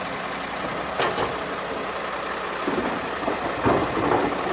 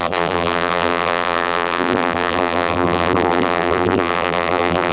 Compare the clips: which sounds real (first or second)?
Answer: first